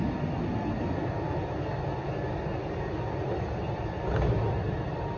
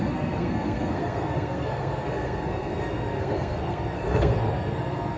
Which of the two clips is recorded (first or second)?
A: first